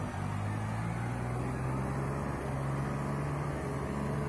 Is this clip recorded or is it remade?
recorded